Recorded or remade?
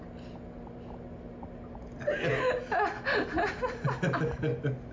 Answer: recorded